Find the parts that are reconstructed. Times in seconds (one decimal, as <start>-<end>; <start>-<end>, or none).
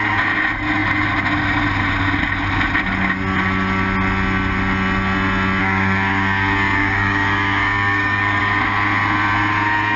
5.6-8.4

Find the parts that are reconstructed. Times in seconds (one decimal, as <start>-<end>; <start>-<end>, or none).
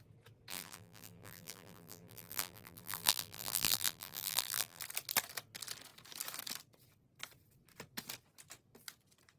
0.5-4.8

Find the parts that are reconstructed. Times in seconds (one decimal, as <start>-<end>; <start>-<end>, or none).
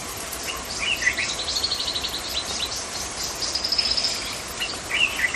0.0-5.4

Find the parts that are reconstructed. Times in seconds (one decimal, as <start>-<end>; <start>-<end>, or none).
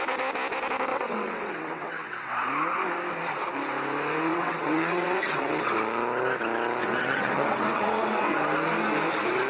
0.9-2.3; 4.3-5.7; 6.8-8.4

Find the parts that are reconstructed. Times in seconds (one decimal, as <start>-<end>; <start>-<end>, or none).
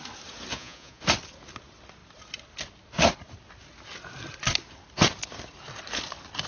0.5-1.0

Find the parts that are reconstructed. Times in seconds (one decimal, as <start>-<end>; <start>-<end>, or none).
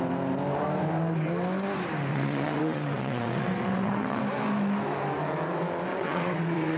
2.1-4.2; 5.9-6.8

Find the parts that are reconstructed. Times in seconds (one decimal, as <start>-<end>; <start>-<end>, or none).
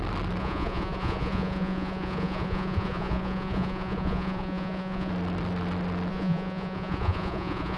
0.4-5.1; 6.1-7.8